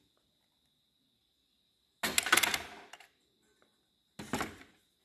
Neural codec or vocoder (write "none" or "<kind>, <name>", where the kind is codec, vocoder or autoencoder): none